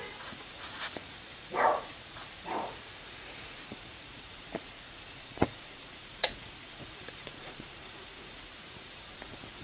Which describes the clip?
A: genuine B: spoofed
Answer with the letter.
B